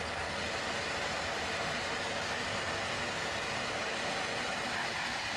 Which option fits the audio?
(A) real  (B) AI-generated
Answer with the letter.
A